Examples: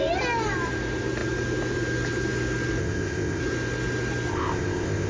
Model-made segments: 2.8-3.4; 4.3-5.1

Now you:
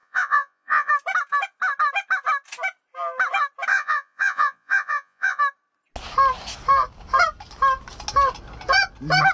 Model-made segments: 0.0-0.9; 3.7-5.4